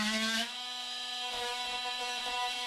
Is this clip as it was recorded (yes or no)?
no